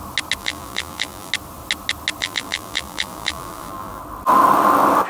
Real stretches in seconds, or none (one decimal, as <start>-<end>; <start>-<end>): 0.0-0.4; 1.3-2.2; 4.0-5.1